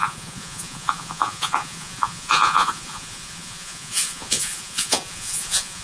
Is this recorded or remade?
remade